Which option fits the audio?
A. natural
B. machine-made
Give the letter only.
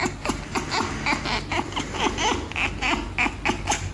A